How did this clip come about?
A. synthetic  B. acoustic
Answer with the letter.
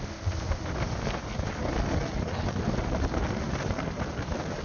B